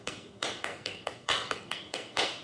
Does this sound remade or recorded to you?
remade